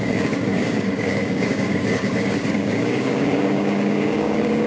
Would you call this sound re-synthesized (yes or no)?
yes